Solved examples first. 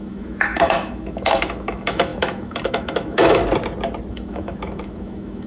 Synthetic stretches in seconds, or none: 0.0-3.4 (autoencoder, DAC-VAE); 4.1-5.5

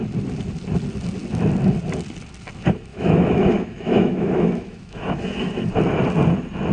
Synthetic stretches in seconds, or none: 2.9-5.5 (autoencoder, DAC-VAE)

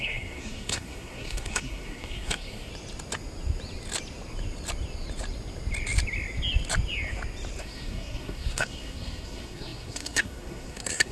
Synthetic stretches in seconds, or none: 0.0-2.7 (codec, SNAC); 7.6-11.1

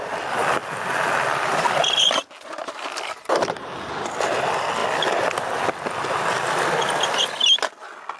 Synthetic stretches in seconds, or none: none

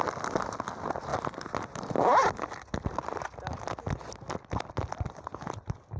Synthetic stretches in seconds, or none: none

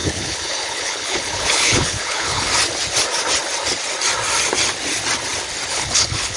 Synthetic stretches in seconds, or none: 0.0-2.5 (codec, HILCodec); 5.7-6.4

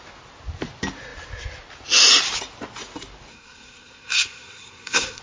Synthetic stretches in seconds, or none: 3.3-5.2 (codec, SNAC)